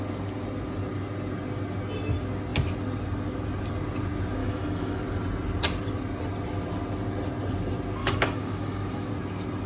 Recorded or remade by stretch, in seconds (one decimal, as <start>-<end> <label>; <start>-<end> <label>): 0.0-4.4 recorded; 4.4-5.0 remade; 5.0-8.0 recorded; 8.0-9.1 remade; 9.1-9.7 recorded